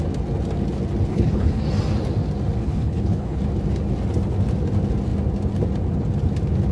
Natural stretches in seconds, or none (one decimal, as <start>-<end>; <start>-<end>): 0.0-1.1; 1.6-2.6; 3.4-6.7